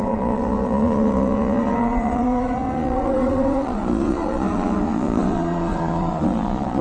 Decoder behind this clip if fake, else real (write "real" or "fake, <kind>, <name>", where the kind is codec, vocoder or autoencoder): fake, vocoder, Vocos